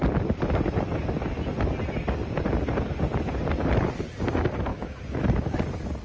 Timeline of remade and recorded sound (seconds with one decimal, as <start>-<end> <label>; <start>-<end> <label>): 0.0-4.7 recorded; 4.7-5.6 remade; 5.6-6.0 recorded

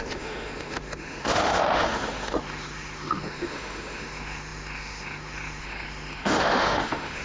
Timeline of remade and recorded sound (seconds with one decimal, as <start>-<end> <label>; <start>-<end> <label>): 0.0-7.2 remade

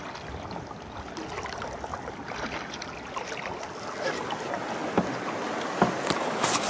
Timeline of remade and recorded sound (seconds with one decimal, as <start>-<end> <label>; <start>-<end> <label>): 0.0-6.7 recorded

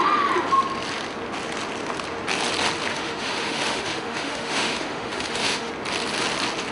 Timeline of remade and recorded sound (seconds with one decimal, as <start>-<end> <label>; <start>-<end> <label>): 0.0-2.9 recorded; 2.9-5.7 remade; 5.7-6.7 recorded

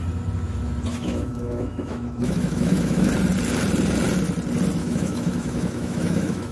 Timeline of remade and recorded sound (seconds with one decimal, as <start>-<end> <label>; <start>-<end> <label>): 0.0-0.9 recorded; 0.9-3.1 remade; 3.1-4.8 recorded; 4.8-6.5 remade

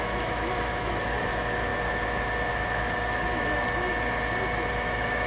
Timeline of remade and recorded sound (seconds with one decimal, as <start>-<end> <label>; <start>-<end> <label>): 0.0-1.7 remade; 1.7-2.5 recorded; 2.5-3.9 remade; 3.9-4.7 recorded; 4.7-5.3 remade

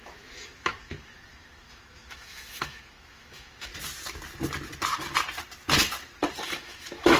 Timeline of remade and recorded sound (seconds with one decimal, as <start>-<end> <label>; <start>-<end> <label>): 0.0-3.7 remade; 3.7-6.4 recorded; 6.4-7.2 remade